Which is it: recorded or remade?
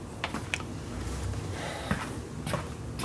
recorded